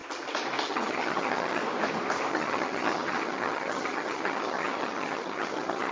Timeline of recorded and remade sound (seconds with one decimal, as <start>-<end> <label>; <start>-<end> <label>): 0.0-0.6 recorded; 0.6-1.6 remade; 1.6-2.3 recorded; 2.3-5.9 remade